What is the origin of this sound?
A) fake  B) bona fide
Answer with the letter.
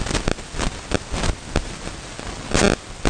B